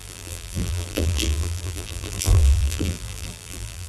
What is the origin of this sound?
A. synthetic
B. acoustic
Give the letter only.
A